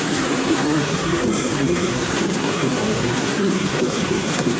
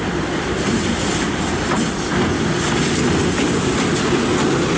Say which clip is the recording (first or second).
second